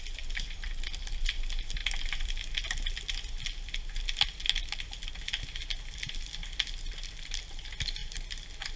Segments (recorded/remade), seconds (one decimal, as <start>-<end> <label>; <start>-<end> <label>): 0.0-8.8 recorded